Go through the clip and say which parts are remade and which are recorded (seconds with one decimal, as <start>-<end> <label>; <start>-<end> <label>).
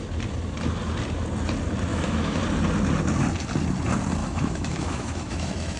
0.0-1.9 recorded; 1.9-2.4 remade; 2.4-4.2 recorded; 4.2-5.8 remade